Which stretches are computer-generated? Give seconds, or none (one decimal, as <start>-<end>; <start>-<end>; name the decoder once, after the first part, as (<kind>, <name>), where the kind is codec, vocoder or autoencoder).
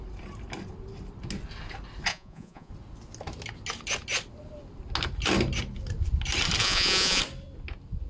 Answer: 2.1-2.7 (vocoder, Vocos); 6.6-7.2